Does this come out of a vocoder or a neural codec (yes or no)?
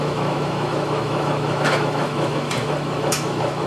yes